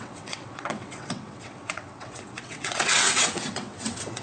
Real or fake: fake